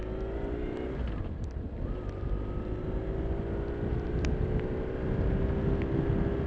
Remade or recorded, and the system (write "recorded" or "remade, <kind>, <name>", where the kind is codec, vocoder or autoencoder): recorded